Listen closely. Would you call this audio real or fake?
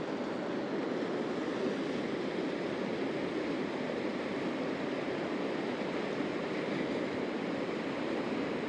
real